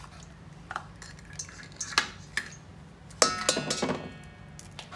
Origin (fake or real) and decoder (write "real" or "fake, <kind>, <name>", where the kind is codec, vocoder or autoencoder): real